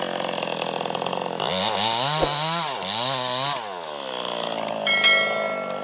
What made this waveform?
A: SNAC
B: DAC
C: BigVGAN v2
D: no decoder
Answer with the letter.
D